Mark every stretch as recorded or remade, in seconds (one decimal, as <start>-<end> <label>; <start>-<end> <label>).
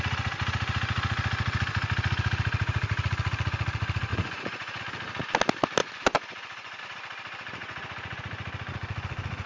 0.0-4.1 recorded; 4.1-4.8 remade; 4.8-5.8 recorded; 5.8-6.8 remade; 6.8-7.6 recorded; 7.6-8.2 remade; 8.2-9.5 recorded